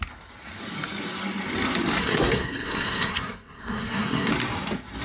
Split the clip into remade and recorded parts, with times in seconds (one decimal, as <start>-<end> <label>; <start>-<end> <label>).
0.0-2.0 recorded; 2.0-4.3 remade; 4.3-5.0 recorded